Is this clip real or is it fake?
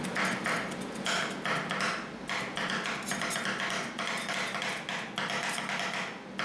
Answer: real